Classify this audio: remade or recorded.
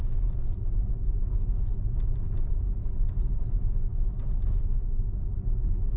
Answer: recorded